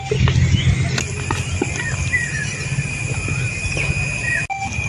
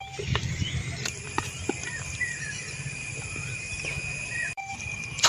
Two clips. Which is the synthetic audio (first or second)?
second